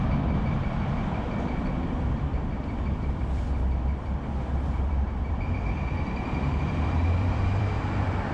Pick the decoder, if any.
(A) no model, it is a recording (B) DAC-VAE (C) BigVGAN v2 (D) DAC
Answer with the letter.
C